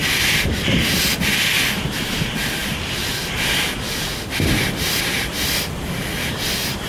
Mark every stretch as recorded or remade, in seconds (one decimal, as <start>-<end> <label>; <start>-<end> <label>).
0.0-6.9 recorded